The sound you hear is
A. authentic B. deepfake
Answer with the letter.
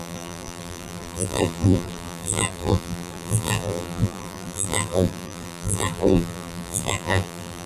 B